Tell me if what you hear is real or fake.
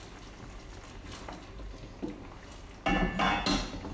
real